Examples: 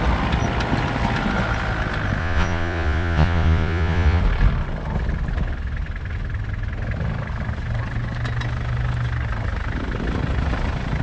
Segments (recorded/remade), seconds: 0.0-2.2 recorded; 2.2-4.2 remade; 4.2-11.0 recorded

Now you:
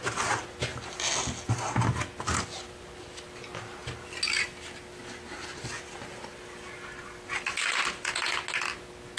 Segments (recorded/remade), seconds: 0.0-9.2 recorded